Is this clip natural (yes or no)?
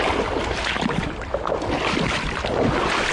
yes